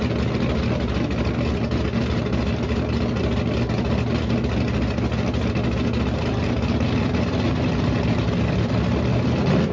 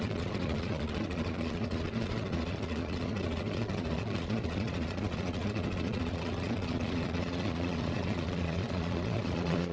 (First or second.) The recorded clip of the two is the first